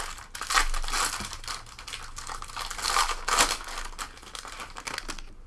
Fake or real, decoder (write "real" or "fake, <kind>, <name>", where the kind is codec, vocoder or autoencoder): real